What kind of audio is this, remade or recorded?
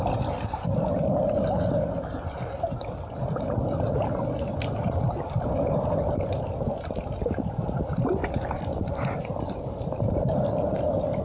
recorded